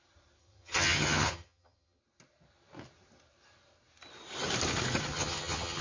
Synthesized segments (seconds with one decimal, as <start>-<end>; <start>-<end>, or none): 0.4-2.0; 5.1-5.8